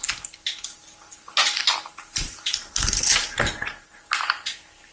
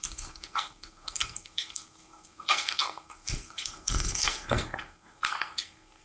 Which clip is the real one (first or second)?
first